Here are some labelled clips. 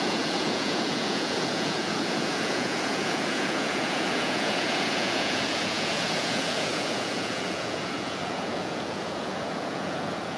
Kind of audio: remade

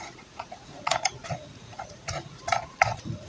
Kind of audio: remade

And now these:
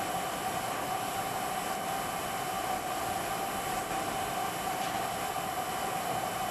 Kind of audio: recorded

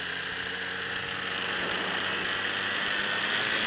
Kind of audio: recorded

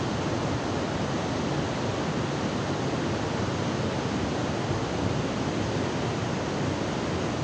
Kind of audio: recorded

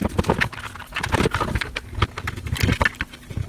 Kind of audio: recorded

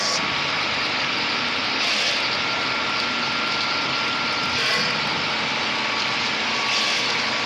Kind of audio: recorded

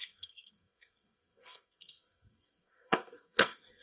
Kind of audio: remade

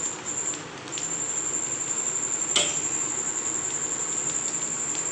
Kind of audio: recorded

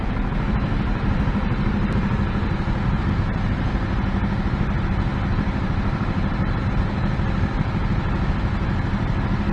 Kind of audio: recorded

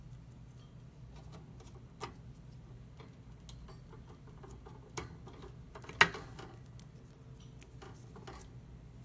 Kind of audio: recorded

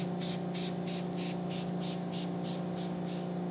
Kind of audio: recorded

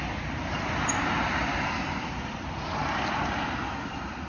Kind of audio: recorded